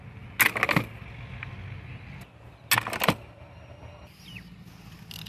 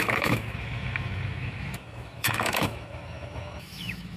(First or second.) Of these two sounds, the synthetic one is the second